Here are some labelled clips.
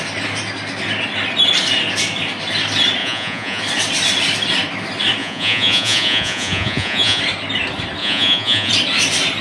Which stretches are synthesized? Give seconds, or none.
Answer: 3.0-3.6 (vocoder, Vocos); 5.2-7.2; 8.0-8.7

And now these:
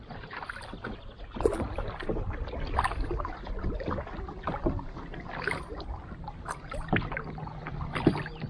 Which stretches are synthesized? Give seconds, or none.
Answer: none

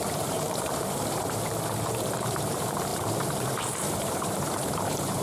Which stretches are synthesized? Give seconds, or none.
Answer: 0.0-5.2 (vocoder, BigVGAN v2)

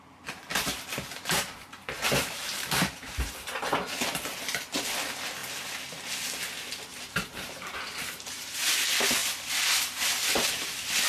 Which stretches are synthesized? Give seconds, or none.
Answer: 0.5-3.3 (vocoder, BigVGAN v2); 6.9-8.6

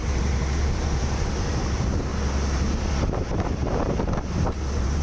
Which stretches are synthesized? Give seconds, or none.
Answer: 0.0-2.1 (vocoder, BigVGAN v2); 2.9-5.0